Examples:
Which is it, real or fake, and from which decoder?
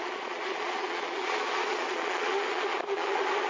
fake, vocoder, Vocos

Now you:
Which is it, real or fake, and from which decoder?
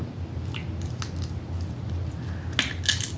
real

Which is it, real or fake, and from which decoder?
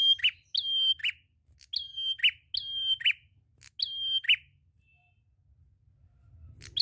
real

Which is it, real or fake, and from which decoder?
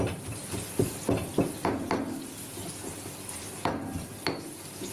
real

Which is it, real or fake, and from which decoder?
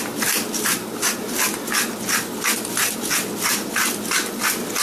real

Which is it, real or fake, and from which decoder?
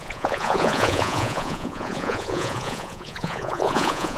fake, vocoder, Vocos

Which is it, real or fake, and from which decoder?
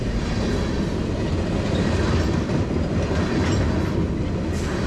real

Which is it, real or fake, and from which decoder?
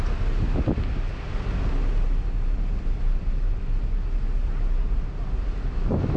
real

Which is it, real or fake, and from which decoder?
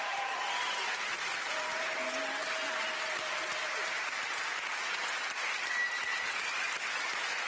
real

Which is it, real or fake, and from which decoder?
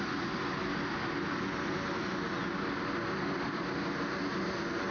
real